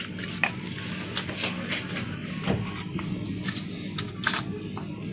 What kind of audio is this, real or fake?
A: real